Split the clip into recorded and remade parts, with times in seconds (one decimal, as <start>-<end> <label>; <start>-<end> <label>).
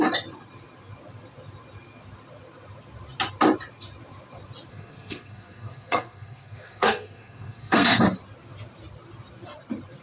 0.0-4.7 recorded; 4.7-8.0 remade; 8.0-10.0 recorded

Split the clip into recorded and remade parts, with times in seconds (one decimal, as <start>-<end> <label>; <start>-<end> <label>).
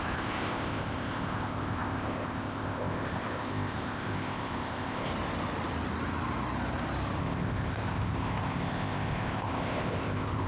0.0-5.1 remade; 5.1-7.2 recorded; 7.2-10.5 remade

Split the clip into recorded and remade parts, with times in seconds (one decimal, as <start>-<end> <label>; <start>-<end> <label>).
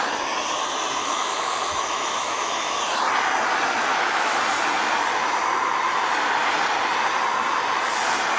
0.0-1.0 recorded; 1.0-2.8 remade; 2.8-3.9 recorded; 3.9-4.4 remade; 4.4-8.4 recorded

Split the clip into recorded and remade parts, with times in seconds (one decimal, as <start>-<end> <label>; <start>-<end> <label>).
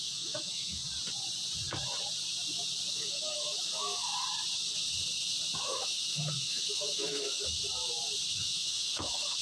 0.0-0.8 remade; 0.8-2.9 recorded; 2.9-4.1 remade; 4.1-5.6 recorded; 5.6-7.6 remade; 7.6-8.3 recorded; 8.3-9.4 remade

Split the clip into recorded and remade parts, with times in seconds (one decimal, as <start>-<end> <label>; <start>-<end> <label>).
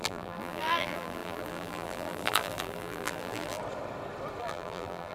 0.0-3.6 remade; 3.6-4.4 recorded; 4.4-5.1 remade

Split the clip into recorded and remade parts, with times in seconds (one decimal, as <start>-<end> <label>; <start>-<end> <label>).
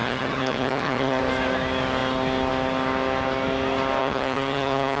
0.0-1.2 remade; 1.2-4.0 recorded; 4.0-5.0 remade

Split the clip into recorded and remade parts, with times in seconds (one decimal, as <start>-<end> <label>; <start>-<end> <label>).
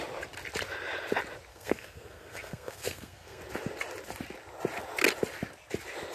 0.0-1.5 recorded; 1.5-3.4 remade; 3.4-6.1 recorded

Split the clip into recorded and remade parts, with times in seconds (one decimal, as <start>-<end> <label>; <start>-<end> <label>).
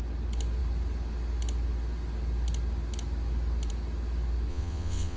0.0-4.5 recorded; 4.5-5.2 remade